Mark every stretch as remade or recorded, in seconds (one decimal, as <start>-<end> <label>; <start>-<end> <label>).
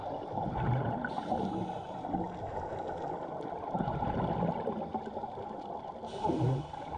0.0-7.0 recorded